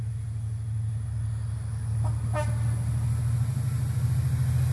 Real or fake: real